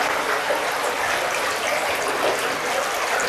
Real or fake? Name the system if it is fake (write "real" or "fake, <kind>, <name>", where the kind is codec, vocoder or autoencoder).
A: real